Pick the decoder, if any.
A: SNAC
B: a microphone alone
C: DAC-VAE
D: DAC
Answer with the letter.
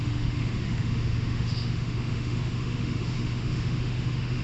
C